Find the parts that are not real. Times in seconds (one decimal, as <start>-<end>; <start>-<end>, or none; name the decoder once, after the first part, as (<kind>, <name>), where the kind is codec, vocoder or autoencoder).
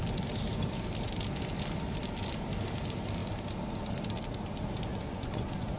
4.9-5.8 (vocoder, Vocos)